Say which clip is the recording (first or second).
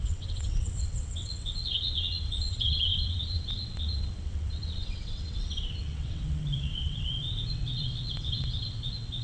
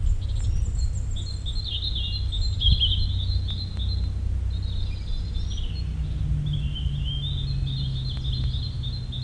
second